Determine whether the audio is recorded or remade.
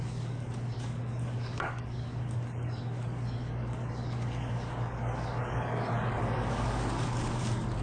remade